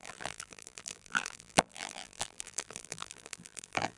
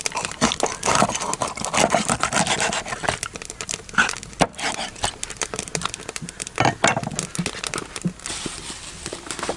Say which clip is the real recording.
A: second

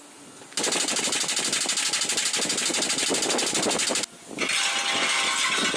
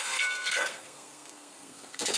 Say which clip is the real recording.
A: first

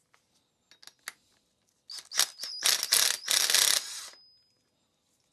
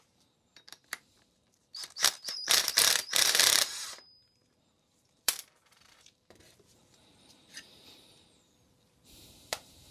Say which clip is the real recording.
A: first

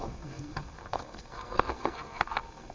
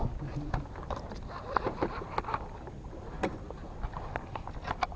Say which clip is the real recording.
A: second